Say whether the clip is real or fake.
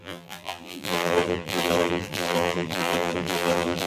fake